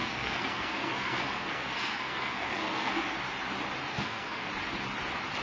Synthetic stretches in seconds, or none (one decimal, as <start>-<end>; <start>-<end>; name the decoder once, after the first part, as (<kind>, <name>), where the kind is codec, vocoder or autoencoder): 0.0-3.2 (codec, SNAC); 3.9-4.5